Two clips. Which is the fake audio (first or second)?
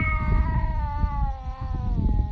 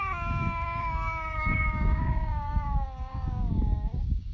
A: second